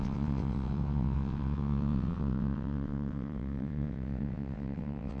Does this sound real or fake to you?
fake